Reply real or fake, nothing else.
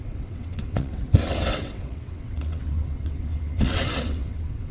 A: fake